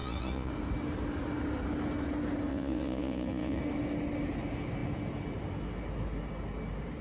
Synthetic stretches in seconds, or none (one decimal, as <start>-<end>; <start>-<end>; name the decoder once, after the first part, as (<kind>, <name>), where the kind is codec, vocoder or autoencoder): 0.0-0.5 (vocoder, Vocos); 2.5-3.6